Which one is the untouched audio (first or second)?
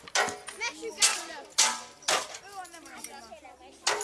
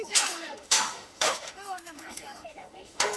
first